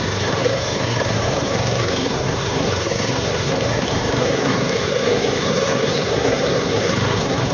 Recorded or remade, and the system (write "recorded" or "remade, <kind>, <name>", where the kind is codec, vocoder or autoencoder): remade, codec, SNAC